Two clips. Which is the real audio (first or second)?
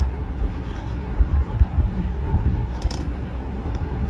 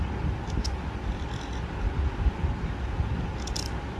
second